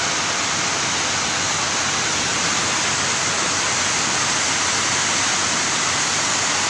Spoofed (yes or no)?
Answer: no